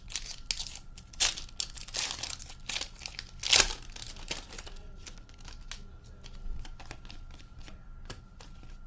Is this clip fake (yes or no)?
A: no